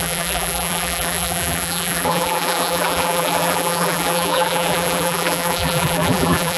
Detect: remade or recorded remade